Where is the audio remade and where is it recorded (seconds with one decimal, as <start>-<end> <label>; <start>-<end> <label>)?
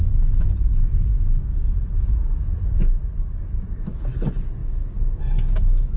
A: 0.0-6.0 recorded